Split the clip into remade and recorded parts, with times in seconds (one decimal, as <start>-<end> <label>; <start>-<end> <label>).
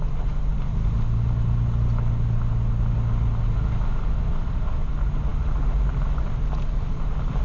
0.0-7.4 recorded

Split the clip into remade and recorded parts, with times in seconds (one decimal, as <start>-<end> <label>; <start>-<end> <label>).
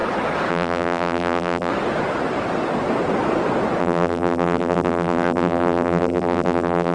0.0-0.5 recorded; 0.5-1.7 remade; 1.7-3.8 recorded; 3.8-6.9 remade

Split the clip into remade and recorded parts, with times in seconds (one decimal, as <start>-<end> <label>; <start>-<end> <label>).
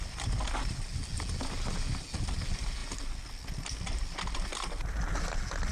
0.0-5.7 recorded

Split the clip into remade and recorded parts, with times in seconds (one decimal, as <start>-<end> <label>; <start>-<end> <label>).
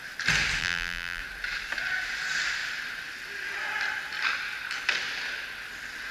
0.0-0.6 recorded; 0.6-1.2 remade; 1.2-6.1 recorded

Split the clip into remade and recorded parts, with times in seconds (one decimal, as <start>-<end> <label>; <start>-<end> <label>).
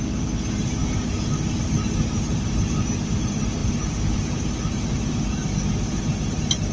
0.0-0.8 recorded; 0.8-2.4 remade; 2.4-3.6 recorded; 3.6-5.7 remade; 5.7-6.7 recorded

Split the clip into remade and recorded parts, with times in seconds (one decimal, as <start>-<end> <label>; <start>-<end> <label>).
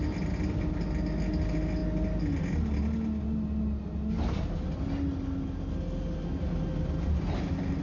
0.0-7.8 recorded